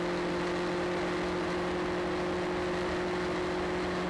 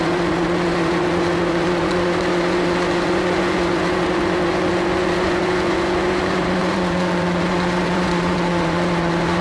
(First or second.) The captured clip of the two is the first